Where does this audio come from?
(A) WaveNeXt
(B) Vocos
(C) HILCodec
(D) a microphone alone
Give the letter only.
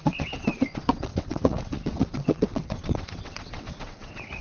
A